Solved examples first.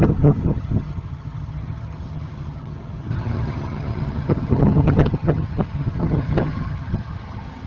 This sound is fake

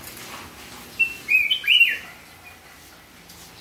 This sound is real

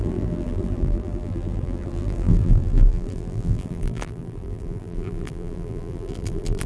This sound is fake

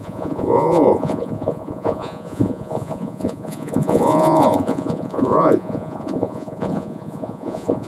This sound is fake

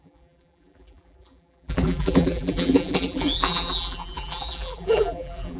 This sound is fake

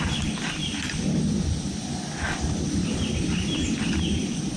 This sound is real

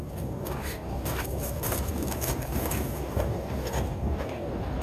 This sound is fake